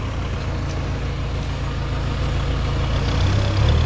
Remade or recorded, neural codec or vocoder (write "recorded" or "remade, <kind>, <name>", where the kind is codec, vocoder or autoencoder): recorded